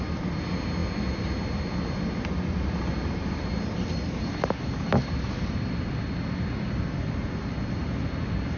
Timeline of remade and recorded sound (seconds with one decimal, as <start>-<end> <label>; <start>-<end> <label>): 0.0-8.6 recorded